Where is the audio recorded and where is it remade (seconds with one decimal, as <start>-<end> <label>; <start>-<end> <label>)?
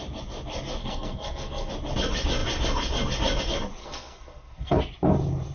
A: 0.0-0.8 recorded; 0.8-1.7 remade; 1.7-3.8 recorded; 3.8-4.8 remade; 4.8-5.5 recorded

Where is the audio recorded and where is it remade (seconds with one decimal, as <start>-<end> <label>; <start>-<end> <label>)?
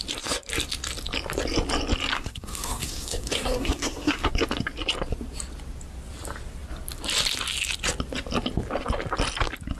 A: 0.0-2.1 recorded; 2.1-4.3 remade; 4.3-9.8 recorded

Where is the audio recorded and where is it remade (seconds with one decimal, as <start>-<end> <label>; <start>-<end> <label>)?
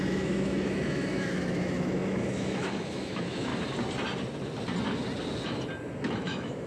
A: 0.0-3.5 remade; 3.5-6.2 recorded; 6.2-6.7 remade